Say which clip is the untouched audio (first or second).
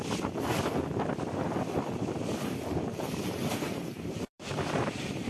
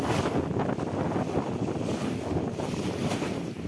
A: second